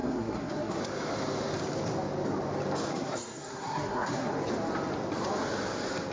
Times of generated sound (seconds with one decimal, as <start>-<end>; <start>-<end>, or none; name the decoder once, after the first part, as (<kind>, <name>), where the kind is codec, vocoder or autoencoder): 0.0-0.8 (codec, SNAC); 2.9-4.3